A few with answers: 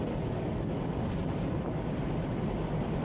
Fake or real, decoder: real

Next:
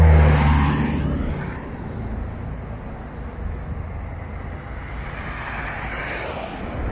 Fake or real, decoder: real